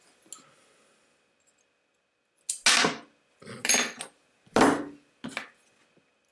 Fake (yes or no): no